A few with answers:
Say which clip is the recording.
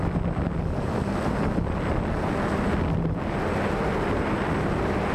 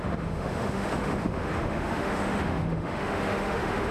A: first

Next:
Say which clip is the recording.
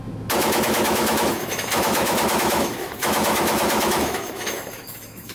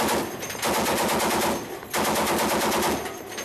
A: second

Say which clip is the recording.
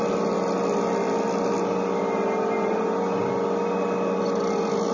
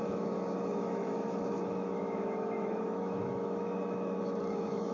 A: first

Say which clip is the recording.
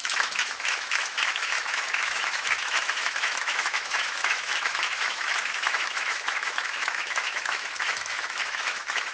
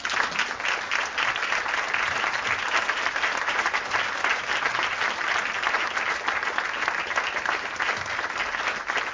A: second